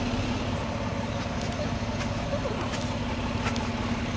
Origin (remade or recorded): recorded